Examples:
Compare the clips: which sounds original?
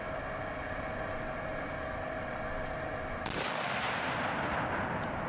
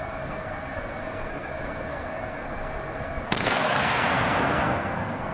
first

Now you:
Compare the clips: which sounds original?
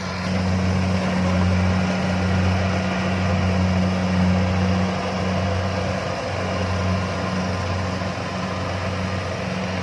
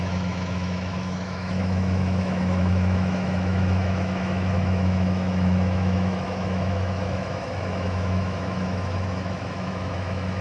first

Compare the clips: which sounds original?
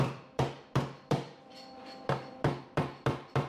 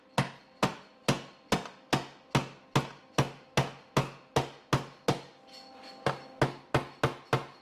second